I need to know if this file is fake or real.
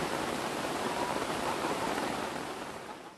fake